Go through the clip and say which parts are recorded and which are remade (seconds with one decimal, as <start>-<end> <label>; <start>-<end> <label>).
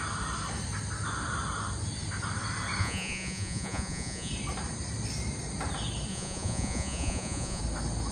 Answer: 0.0-2.8 recorded; 2.8-4.3 remade; 4.3-6.1 recorded; 6.1-7.6 remade; 7.6-8.1 recorded